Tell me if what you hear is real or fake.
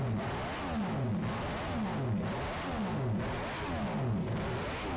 real